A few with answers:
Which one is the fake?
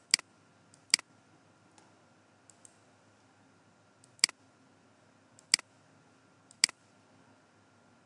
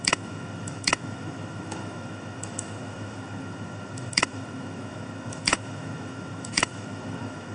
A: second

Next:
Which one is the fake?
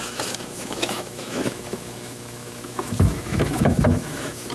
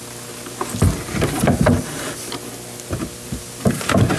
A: first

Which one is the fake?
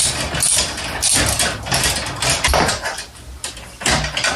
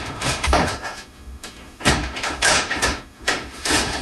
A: second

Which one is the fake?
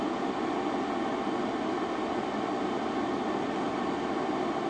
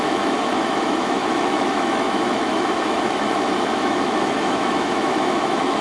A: second